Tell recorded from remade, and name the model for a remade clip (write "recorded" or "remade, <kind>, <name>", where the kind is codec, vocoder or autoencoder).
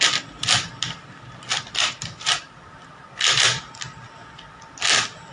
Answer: recorded